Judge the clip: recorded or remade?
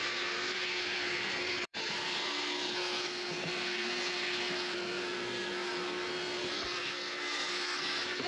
remade